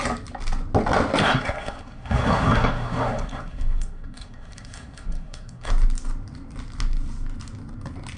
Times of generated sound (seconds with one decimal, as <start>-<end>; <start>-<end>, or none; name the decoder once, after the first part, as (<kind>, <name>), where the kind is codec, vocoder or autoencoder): 1.2-5.7 (codec, SNAC)